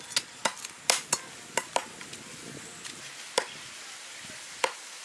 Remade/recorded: recorded